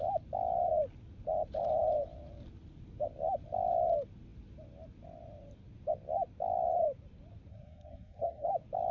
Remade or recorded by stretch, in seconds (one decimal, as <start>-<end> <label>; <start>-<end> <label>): 0.0-7.5 recorded; 7.5-8.5 remade; 8.5-8.9 recorded